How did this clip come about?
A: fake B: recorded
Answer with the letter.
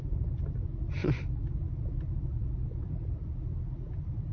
B